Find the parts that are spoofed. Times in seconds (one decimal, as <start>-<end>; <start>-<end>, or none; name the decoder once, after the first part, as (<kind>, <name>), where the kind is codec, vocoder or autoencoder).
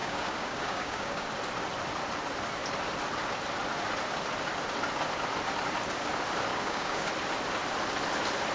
0.0-1.3 (codec, DAC); 6.5-7.1